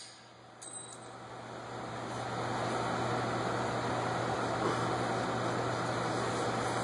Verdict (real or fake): real